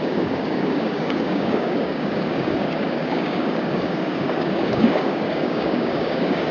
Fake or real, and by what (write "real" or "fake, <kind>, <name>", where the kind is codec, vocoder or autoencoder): fake, codec, DAC